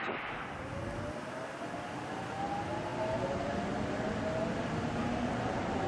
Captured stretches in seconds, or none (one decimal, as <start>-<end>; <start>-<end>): 0.0-5.9